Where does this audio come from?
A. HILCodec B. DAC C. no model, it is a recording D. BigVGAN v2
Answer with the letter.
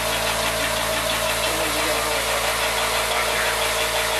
C